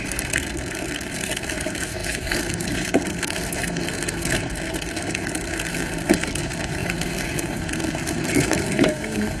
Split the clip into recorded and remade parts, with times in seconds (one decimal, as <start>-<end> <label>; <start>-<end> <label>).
0.0-9.4 remade